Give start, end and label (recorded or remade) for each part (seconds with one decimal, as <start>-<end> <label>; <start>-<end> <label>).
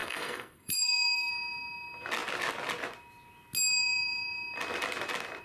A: 0.0-1.3 remade; 1.3-5.4 recorded